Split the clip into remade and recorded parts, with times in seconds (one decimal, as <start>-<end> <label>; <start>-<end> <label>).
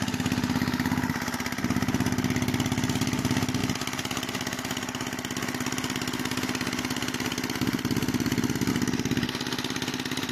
0.0-10.3 recorded